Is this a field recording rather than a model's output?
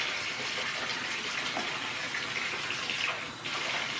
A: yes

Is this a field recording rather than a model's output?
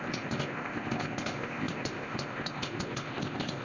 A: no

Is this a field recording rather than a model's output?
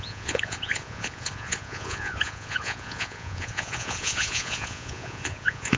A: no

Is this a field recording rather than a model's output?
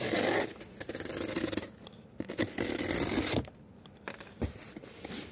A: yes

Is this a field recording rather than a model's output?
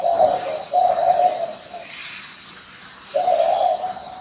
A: yes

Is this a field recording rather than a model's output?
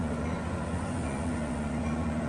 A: no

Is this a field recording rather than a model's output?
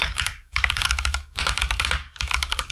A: no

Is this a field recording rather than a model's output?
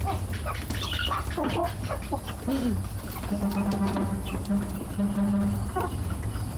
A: yes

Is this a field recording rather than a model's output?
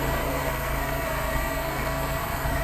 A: no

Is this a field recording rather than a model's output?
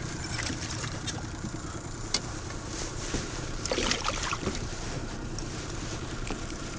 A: no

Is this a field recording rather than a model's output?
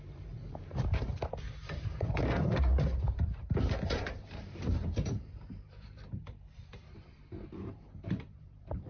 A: no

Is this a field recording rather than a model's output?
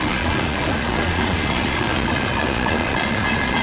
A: no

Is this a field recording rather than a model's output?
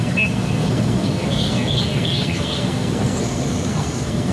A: no